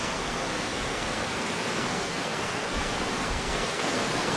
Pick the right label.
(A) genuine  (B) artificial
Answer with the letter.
B